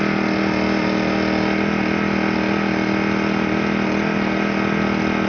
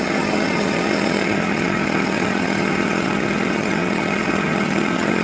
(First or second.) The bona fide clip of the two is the first